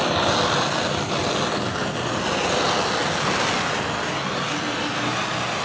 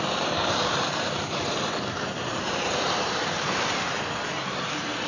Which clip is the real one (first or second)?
first